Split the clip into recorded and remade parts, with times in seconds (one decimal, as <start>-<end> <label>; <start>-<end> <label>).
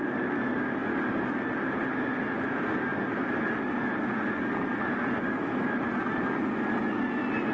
0.0-0.8 recorded; 0.8-1.5 remade; 1.5-3.2 recorded; 3.2-3.8 remade; 3.8-7.5 recorded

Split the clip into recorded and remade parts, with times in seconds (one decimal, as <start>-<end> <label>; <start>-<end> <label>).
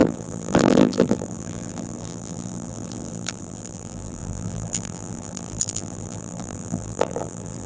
0.0-7.7 remade